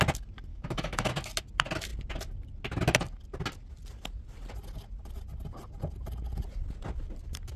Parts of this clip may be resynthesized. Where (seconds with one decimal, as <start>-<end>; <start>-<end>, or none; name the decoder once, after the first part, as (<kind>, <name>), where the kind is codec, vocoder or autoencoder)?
0.5-1.1 (autoencoder, DAC-VAE)